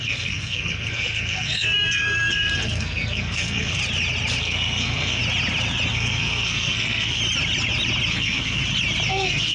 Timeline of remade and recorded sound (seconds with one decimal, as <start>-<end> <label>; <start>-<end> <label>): 0.0-3.8 remade; 3.8-4.4 recorded; 4.4-5.2 remade; 5.2-5.9 recorded; 5.9-7.2 remade; 7.2-8.1 recorded; 8.1-8.6 remade; 8.6-9.1 recorded; 9.1-9.5 remade